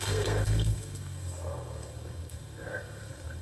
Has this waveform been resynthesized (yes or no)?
yes